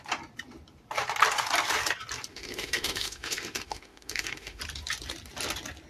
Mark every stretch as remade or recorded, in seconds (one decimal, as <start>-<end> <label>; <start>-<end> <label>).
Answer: 0.0-2.3 recorded; 2.3-4.6 remade; 4.6-5.9 recorded